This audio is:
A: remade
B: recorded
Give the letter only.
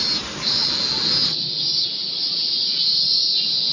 B